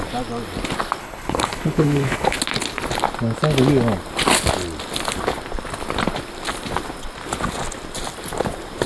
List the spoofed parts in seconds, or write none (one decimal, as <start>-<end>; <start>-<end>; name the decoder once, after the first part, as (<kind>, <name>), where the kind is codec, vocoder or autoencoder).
1.0-2.4 (codec, HILCodec)